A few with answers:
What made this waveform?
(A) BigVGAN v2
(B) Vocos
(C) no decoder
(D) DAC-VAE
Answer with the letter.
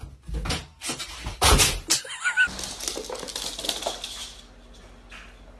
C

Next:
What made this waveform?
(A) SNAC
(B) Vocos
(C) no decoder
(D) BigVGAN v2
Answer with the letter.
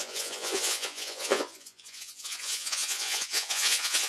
B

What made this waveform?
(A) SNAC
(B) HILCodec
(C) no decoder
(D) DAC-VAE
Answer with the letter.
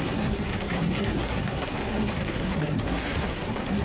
A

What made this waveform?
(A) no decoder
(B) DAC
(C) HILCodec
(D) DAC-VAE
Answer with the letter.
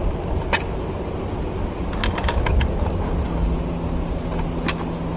A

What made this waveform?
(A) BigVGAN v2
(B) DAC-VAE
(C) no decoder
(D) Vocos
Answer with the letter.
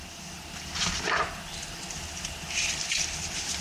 C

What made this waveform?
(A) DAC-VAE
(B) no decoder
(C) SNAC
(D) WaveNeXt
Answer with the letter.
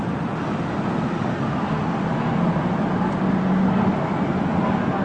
B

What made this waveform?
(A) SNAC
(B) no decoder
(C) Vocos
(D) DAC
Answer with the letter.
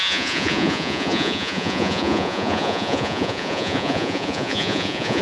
C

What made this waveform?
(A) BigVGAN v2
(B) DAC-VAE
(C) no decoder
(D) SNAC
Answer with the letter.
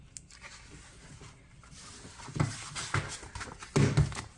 C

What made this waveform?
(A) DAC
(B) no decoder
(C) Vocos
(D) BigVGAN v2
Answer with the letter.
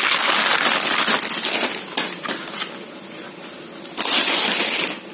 B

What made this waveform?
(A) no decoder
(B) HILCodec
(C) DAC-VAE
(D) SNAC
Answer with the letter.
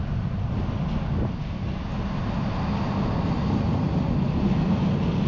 A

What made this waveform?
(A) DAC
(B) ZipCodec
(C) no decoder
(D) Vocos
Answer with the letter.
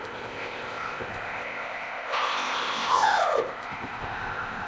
B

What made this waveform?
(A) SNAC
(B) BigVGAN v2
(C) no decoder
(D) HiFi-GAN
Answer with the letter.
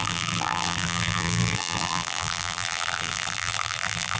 B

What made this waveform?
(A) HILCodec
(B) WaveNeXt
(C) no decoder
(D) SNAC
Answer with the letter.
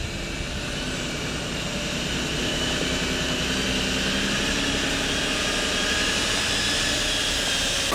C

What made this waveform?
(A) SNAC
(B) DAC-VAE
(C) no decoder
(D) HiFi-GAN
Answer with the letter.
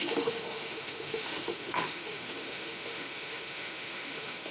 B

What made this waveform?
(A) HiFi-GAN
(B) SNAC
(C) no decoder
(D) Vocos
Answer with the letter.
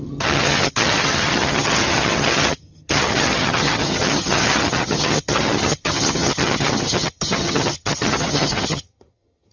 A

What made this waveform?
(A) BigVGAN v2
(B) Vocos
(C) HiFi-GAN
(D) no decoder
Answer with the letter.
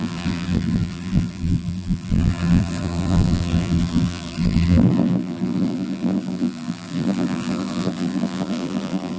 A